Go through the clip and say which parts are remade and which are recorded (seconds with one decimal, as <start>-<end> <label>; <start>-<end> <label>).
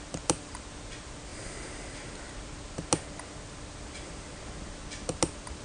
0.0-5.6 recorded